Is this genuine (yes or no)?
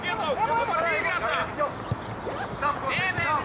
yes